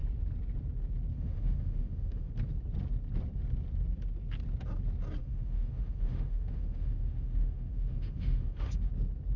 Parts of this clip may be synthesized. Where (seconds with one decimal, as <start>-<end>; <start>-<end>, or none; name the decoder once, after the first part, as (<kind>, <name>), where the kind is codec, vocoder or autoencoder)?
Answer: 1.1-2.3 (autoencoder, DAC-VAE); 5.2-8.9